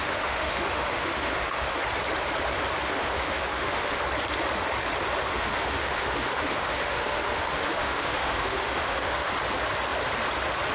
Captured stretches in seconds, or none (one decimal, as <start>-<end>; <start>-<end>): 1.8-2.9; 4.0-5.3; 9.3-10.7